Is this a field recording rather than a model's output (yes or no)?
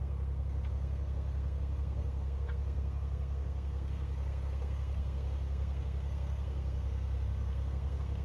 no